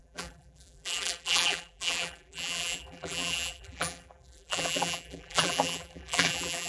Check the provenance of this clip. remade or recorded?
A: remade